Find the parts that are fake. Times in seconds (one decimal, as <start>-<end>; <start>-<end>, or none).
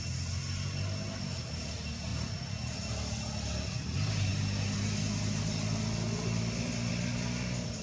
none